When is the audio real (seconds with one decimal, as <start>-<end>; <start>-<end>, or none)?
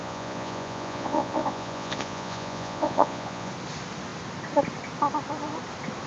3.5-6.1